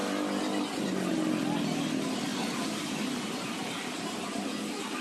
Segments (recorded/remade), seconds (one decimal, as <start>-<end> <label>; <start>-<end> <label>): 0.0-5.0 recorded